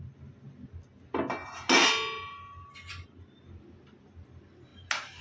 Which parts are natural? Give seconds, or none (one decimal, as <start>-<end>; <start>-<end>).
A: 0.0-5.2